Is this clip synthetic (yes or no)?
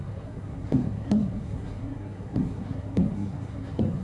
yes